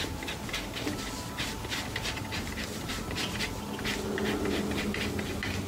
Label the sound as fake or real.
real